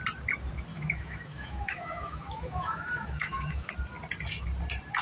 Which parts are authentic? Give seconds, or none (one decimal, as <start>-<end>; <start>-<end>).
0.0-0.7; 3.7-5.0